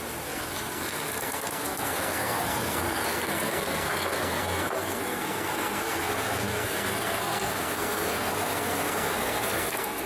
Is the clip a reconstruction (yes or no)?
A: yes